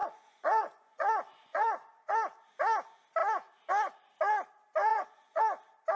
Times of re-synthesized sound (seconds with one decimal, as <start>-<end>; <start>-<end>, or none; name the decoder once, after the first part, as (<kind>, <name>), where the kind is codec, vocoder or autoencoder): 0.0-2.1 (vocoder, Vocos); 4.9-5.4